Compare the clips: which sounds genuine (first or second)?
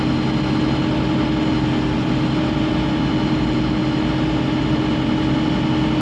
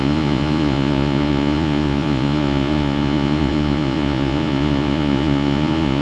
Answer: first